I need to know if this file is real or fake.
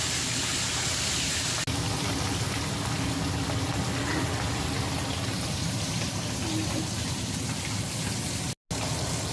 real